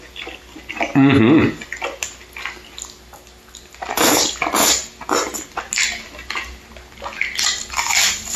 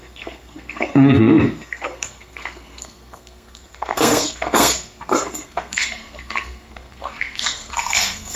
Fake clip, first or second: second